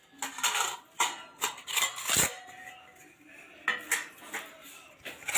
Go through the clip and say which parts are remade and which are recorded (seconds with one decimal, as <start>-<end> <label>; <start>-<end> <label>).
0.0-5.4 recorded